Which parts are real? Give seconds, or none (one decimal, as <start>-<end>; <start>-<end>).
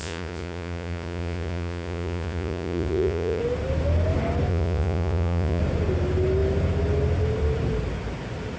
3.4-4.5; 5.6-8.6